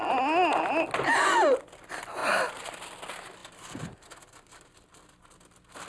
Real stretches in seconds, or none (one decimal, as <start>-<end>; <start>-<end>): 0.0-3.4; 4.2-5.9